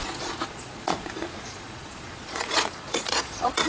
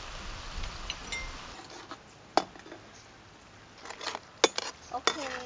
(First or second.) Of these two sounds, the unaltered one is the second